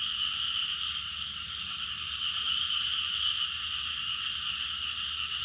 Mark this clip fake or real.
fake